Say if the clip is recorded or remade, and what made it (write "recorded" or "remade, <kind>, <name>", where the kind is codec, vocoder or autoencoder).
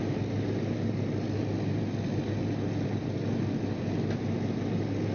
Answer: recorded